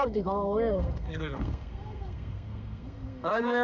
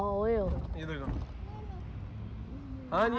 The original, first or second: second